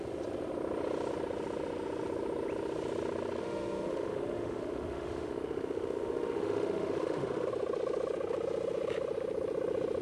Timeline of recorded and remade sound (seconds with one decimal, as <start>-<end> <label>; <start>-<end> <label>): 0.0-3.4 recorded; 3.4-7.5 remade; 7.5-10.0 recorded